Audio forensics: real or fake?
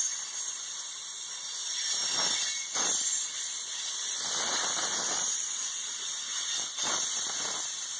fake